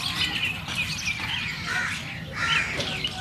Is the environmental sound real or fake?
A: real